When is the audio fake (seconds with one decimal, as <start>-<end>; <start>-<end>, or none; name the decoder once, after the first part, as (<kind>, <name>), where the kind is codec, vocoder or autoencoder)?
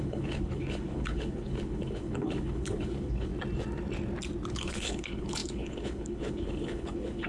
0.0-3.3 (codec, HILCodec); 4.5-7.3